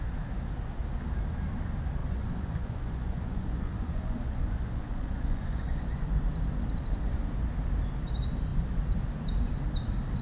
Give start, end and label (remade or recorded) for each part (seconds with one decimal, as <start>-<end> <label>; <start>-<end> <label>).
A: 0.0-2.0 recorded; 2.0-6.2 remade; 6.2-10.2 recorded